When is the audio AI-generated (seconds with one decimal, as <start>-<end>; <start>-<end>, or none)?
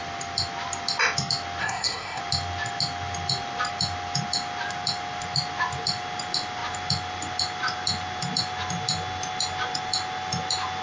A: 1.6-2.2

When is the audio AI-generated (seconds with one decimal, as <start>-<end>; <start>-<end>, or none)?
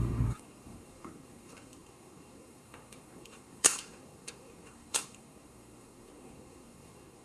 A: 0.0-7.2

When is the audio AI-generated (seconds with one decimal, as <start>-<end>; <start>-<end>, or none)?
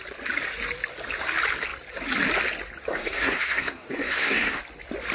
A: 2.9-4.6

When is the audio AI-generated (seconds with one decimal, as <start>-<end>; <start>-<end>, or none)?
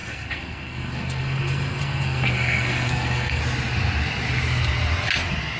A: 0.0-3.4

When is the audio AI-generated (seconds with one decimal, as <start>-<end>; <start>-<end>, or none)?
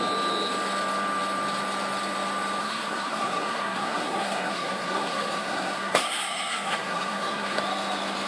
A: 2.6-7.6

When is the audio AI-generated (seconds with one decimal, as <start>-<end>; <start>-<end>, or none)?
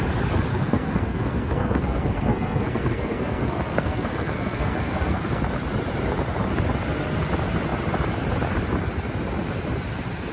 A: 0.5-5.4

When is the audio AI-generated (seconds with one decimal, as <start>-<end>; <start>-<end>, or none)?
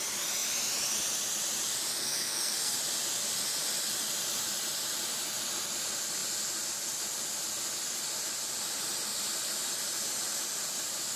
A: 2.0-2.8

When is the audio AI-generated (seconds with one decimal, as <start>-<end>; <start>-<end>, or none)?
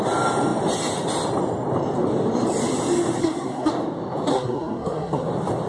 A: 3.2-3.7; 4.3-5.3